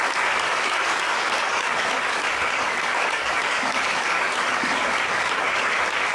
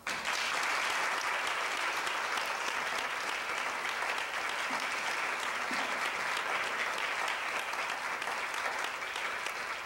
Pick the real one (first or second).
second